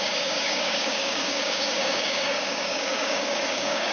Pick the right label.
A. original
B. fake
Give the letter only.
B